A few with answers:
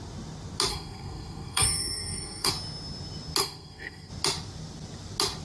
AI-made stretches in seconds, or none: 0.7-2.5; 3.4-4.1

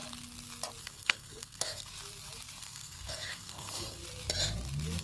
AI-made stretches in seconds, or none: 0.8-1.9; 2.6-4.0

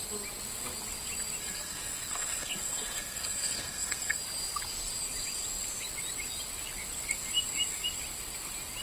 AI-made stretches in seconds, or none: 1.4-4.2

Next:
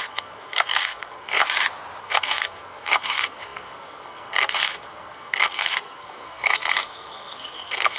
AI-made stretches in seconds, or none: 0.0-1.4; 2.0-8.0

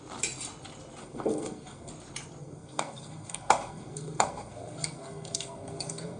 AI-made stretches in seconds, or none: 1.0-1.9; 2.4-6.2

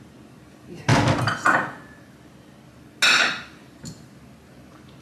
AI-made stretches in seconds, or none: none

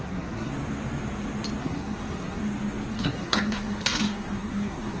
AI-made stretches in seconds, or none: 0.0-0.5; 1.6-2.4; 2.9-5.0